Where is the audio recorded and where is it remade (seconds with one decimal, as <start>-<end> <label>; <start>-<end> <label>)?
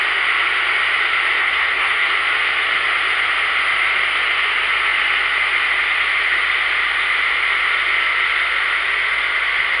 0.0-1.4 recorded; 1.4-2.1 remade; 2.1-9.8 recorded